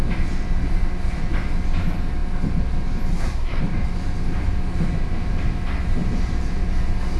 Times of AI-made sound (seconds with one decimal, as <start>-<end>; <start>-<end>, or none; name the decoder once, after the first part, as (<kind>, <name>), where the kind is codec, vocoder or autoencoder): 3.1-3.6 (codec, SNAC)

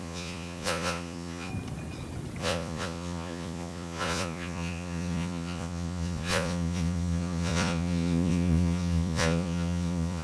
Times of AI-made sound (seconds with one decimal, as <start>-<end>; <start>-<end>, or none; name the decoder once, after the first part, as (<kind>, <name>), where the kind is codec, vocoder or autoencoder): 0.0-1.5 (vocoder, Vocos); 2.4-10.2

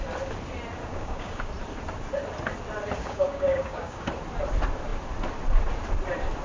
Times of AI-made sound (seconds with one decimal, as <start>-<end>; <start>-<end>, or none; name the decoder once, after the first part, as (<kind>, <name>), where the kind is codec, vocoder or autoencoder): 0.8-1.5 (codec, DAC); 3.0-4.1

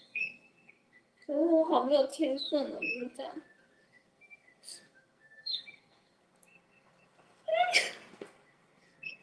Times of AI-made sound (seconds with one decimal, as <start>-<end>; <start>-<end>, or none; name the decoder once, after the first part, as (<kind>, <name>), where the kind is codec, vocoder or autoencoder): 0.0-7.5 (codec, SNAC); 8.1-9.2